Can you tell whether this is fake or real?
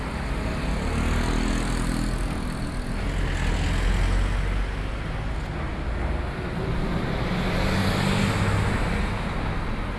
real